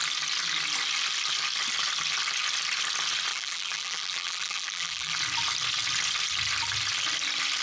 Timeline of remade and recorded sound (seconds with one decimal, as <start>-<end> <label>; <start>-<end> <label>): 0.0-3.3 recorded; 3.3-5.1 remade; 5.1-7.6 recorded